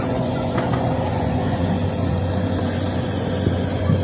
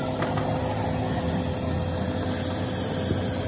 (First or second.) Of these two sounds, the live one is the second